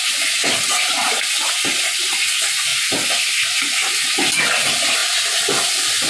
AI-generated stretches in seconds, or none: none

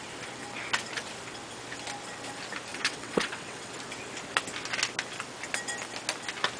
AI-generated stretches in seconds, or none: 2.7-3.7 (vocoder, WaveNeXt)